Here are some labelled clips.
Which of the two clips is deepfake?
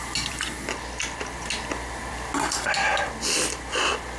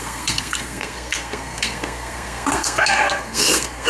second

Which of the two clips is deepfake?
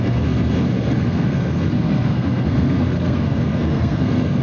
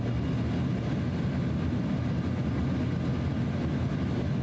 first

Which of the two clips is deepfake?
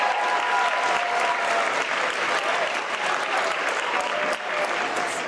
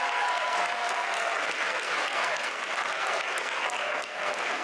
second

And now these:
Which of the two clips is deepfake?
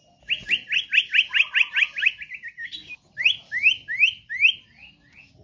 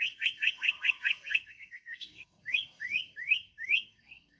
second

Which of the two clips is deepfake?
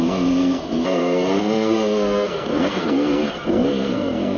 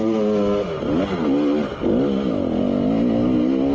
first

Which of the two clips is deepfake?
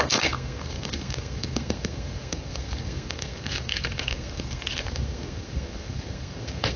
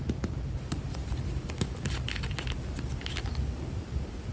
first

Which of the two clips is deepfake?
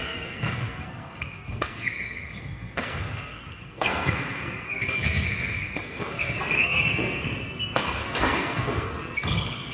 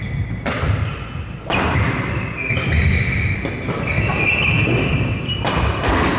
first